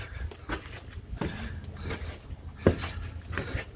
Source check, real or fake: real